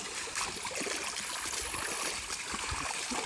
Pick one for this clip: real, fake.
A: real